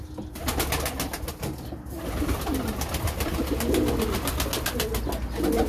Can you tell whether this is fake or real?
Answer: real